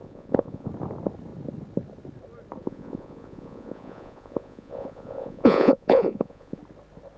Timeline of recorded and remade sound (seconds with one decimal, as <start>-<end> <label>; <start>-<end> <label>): 0.0-0.7 remade; 0.7-2.6 recorded; 2.6-6.6 remade; 6.6-7.2 recorded